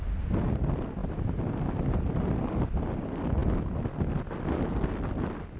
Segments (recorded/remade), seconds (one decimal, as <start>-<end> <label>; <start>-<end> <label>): 0.0-5.6 recorded